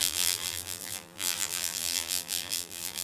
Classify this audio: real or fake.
fake